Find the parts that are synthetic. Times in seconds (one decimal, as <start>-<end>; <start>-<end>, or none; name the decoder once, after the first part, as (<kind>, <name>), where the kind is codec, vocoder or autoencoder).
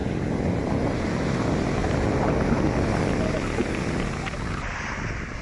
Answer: none